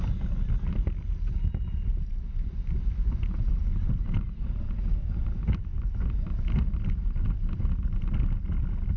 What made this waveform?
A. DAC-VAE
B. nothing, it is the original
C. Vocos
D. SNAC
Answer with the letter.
B